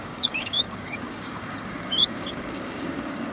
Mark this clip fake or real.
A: fake